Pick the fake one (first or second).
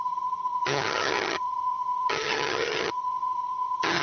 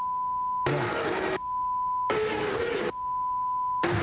first